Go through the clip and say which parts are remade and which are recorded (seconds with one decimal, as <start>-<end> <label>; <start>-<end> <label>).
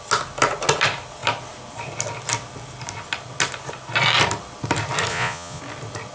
0.0-5.1 recorded; 5.1-5.6 remade; 5.6-6.1 recorded